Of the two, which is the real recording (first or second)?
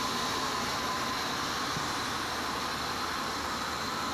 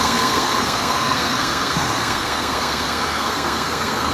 first